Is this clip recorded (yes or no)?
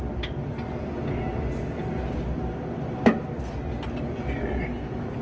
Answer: yes